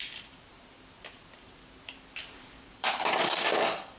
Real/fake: fake